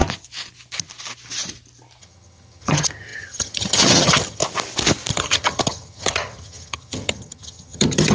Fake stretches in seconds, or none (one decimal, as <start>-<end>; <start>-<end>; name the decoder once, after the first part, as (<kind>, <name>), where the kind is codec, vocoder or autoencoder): 2.0-4.4 (vocoder, HiFi-GAN); 5.1-8.1